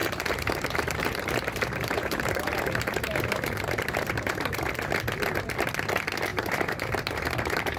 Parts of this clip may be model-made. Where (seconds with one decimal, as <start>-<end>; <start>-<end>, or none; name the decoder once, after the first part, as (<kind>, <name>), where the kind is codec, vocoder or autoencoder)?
0.0-4.7 (vocoder, BigVGAN v2); 6.3-7.8